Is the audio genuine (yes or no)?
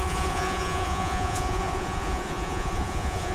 no